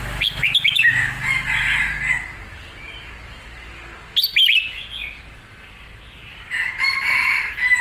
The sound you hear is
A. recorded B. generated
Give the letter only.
A